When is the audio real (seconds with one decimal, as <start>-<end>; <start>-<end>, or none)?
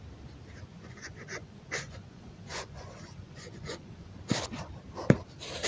0.0-0.7; 4.1-5.7